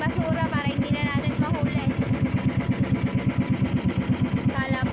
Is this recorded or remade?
recorded